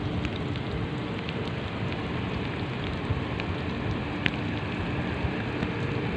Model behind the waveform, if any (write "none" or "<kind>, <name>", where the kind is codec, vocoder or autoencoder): none